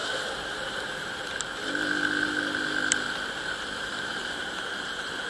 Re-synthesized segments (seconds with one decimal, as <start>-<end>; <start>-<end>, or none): 0.0-1.6; 3.6-5.3